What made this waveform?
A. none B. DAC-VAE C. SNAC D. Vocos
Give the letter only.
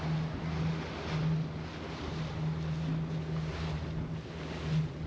A